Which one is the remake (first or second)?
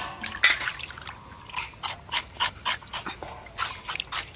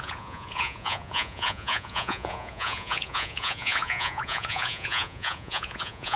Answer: second